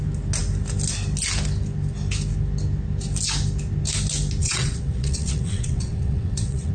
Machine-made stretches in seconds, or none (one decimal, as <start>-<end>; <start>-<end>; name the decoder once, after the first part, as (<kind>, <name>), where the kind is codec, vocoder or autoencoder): 4.4-6.7 (vocoder, WaveNeXt)